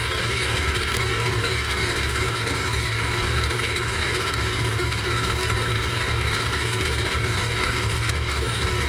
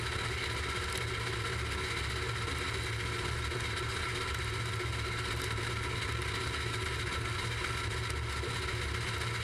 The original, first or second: second